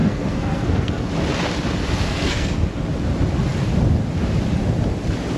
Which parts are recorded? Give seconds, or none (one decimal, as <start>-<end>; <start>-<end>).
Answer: 1.1-2.0; 2.6-5.4